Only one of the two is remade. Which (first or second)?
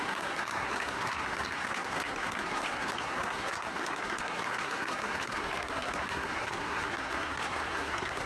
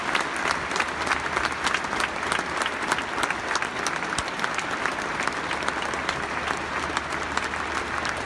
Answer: first